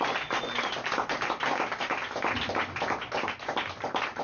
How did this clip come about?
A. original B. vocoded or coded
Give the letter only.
A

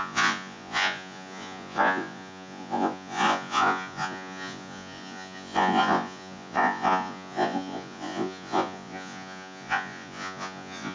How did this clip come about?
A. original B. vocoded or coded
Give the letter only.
B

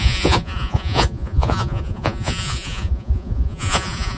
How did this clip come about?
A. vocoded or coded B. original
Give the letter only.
A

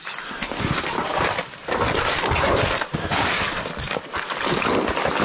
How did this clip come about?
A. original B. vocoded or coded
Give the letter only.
A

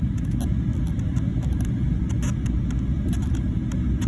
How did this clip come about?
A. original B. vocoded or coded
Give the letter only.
A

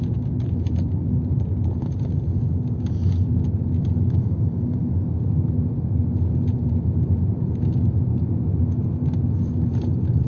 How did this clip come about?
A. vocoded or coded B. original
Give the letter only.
B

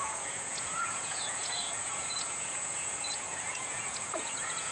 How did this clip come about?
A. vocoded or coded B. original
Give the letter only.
A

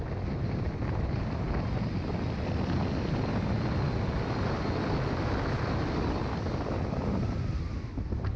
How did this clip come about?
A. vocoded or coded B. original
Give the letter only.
B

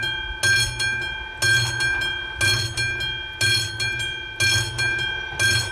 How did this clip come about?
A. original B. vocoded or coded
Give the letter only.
A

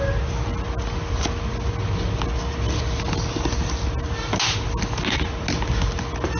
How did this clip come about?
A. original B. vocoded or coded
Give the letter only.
A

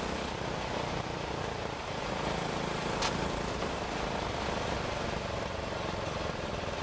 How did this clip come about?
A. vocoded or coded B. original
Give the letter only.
B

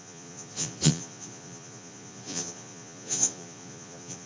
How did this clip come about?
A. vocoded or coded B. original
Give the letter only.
A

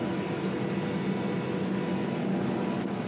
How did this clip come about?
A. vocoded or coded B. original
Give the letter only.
B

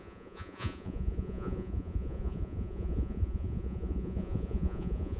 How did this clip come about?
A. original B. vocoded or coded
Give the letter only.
B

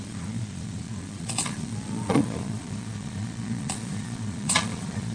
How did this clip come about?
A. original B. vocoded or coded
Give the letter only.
B